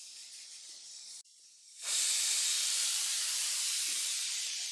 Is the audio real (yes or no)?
no